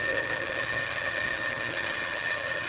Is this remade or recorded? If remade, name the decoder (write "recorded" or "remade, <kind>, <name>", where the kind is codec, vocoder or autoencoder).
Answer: remade, vocoder, HiFi-GAN